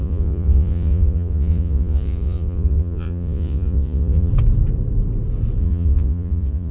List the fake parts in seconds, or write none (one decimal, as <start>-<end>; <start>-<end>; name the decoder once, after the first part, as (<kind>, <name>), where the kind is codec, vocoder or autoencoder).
0.0-4.3 (vocoder, Vocos); 5.6-6.7